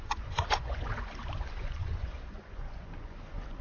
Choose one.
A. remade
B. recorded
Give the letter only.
A